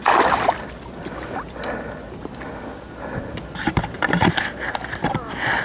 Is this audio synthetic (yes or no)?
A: no